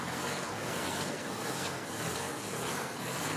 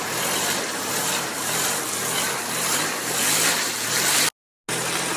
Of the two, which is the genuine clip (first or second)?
second